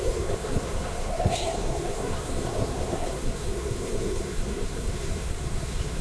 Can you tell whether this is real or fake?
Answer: fake